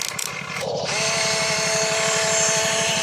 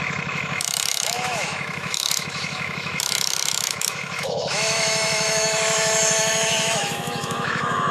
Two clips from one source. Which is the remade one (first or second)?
second